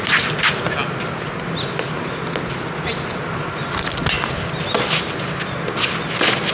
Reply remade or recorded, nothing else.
recorded